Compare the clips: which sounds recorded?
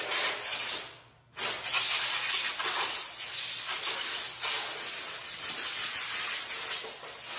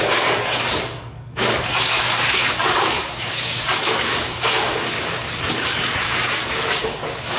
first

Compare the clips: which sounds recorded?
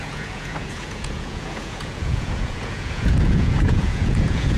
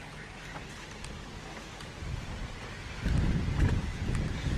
second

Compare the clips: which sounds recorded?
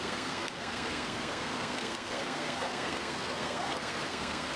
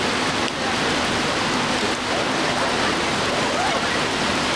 second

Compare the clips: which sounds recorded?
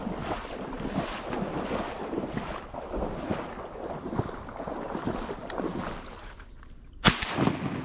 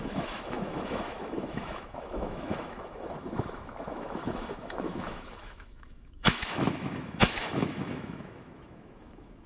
first